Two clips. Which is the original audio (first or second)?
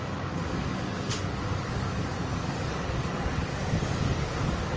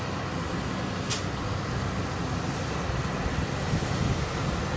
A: second